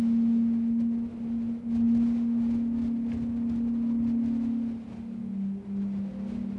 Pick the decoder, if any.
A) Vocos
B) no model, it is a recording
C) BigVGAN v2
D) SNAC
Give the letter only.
B